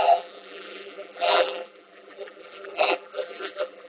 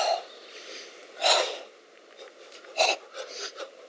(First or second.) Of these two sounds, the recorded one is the second